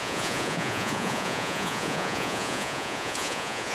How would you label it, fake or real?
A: fake